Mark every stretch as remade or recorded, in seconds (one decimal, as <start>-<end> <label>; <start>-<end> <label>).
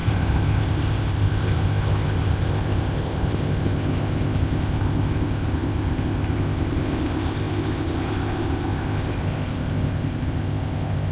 0.0-11.1 remade